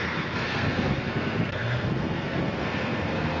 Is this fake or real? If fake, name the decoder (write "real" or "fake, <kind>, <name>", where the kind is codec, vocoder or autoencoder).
fake, codec, SNAC